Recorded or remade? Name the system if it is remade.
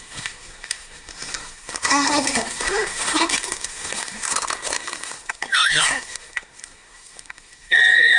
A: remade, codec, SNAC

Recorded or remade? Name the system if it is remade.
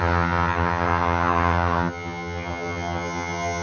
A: remade, vocoder, HiFi-GAN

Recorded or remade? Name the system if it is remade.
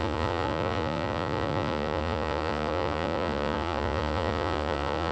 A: remade, vocoder, Vocos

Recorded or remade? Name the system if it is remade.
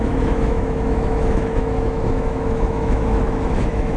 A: remade, autoencoder, DAC-VAE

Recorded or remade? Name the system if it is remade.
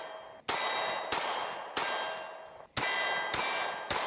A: recorded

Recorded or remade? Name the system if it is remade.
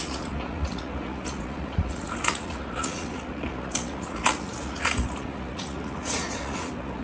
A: remade, vocoder, Vocos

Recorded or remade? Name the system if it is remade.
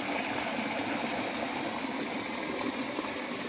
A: recorded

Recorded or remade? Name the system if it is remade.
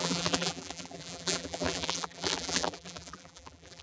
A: remade, vocoder, BigVGAN v2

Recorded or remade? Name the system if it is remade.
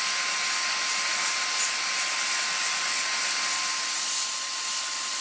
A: recorded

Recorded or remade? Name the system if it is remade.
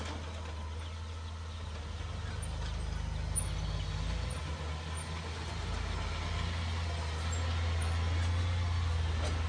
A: recorded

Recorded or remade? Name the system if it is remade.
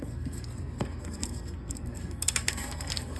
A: remade, codec, SNAC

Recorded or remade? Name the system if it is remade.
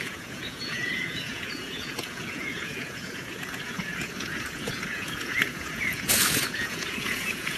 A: remade, vocoder, Vocos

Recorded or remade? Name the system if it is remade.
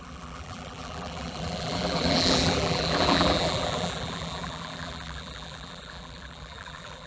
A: remade, vocoder, BigVGAN v2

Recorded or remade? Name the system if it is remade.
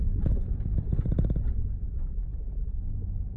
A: remade, vocoder, BigVGAN v2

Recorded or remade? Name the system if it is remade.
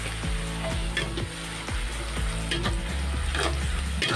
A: recorded